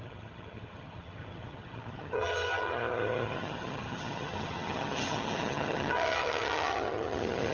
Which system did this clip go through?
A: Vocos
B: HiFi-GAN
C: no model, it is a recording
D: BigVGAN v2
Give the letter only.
B